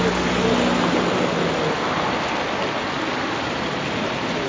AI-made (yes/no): no